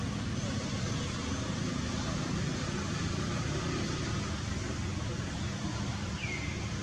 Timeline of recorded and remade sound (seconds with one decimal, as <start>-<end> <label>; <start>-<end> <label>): 0.0-6.8 recorded